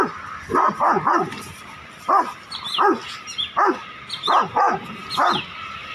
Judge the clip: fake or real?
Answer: real